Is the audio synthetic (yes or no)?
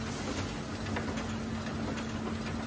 no